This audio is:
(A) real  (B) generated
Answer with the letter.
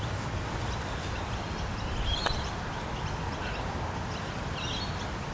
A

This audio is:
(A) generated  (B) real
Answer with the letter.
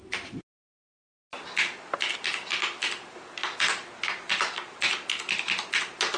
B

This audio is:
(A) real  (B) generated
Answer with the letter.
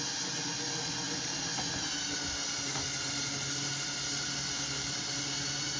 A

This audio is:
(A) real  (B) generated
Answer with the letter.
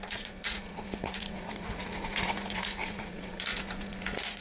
B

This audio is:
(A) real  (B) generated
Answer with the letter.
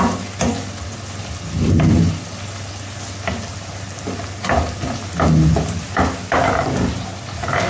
A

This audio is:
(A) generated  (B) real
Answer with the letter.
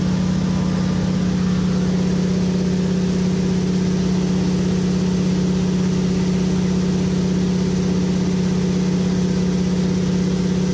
B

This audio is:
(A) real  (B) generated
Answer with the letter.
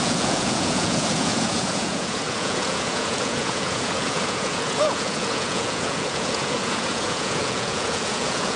B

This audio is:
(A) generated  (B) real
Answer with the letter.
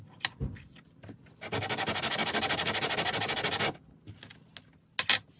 B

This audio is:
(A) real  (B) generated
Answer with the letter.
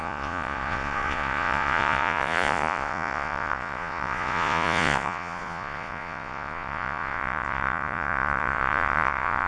B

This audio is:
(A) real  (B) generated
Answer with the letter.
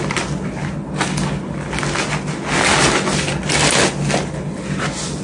A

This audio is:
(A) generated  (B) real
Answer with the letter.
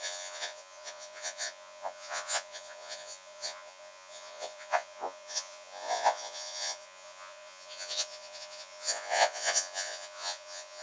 A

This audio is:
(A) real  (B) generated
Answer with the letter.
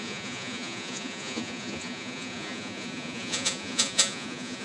B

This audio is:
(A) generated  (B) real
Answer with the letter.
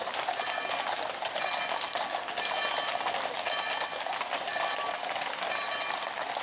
B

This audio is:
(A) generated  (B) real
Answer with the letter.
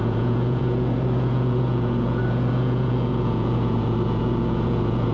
A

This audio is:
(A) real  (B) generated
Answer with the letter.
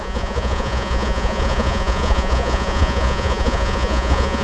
B